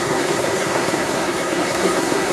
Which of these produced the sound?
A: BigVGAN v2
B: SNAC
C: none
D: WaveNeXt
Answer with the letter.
B